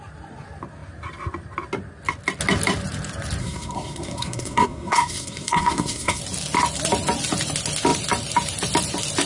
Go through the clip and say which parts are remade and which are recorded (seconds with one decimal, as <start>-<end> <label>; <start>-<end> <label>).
0.0-3.4 recorded; 3.4-6.2 remade; 6.2-9.3 recorded